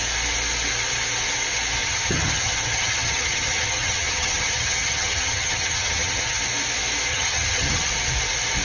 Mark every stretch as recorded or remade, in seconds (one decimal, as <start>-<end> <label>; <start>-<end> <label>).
0.0-1.8 recorded; 1.8-6.4 remade; 6.4-7.1 recorded; 7.1-7.9 remade; 7.9-8.6 recorded